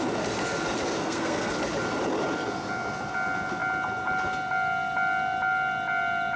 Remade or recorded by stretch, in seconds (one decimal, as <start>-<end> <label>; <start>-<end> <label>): 0.0-1.0 recorded; 1.0-1.5 remade; 1.5-6.4 recorded